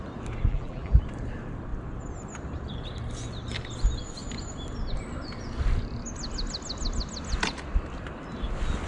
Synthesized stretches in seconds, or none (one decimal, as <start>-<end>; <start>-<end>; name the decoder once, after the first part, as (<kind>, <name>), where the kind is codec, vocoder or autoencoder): 0.5-1.0 (vocoder, BigVGAN v2)